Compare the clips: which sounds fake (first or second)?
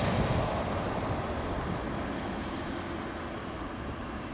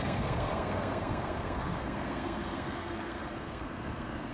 second